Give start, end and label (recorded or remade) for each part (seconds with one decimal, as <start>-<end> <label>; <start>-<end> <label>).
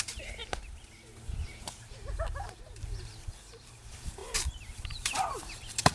0.0-5.9 remade